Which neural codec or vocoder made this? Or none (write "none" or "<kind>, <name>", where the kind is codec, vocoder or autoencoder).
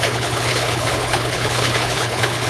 codec, HILCodec